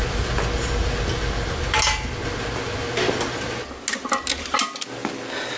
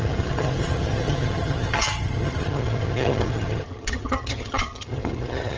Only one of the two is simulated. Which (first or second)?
second